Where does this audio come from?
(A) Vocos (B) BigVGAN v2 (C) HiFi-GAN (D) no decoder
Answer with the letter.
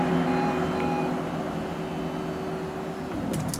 D